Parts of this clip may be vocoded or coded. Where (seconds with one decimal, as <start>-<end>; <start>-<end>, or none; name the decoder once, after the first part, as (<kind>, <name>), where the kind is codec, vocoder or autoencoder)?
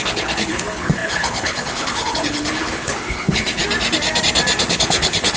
0.0-3.6 (codec, HILCodec); 4.7-5.4